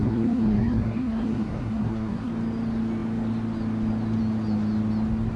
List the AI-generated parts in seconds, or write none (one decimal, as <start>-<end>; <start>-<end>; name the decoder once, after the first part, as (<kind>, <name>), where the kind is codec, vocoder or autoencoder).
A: 0.0-2.3 (codec, SNAC)